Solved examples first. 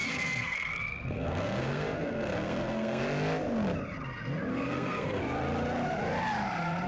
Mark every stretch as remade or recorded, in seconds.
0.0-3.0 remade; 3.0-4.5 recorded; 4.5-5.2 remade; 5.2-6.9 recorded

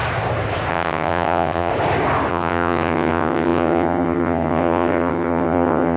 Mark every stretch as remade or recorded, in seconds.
0.0-0.7 recorded; 0.7-1.7 remade; 1.7-2.3 recorded; 2.3-6.0 remade